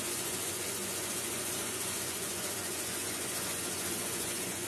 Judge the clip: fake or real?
fake